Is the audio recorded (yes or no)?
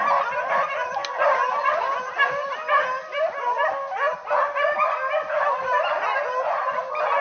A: yes